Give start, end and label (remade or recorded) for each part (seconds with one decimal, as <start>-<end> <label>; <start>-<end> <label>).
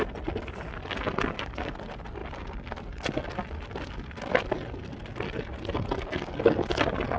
0.0-7.2 recorded